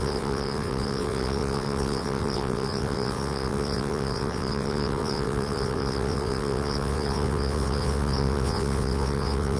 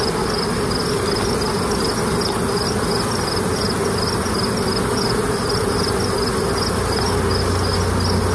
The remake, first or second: first